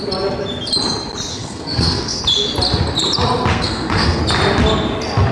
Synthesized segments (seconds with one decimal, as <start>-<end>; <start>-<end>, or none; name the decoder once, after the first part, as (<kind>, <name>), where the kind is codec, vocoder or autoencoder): 1.3-2.2 (codec, SNAC); 3.5-4.2